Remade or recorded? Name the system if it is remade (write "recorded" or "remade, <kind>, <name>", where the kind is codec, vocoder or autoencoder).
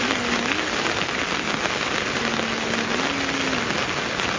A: recorded